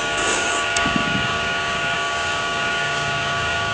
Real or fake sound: fake